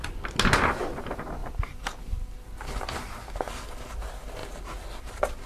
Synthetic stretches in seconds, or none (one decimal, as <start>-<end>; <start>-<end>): none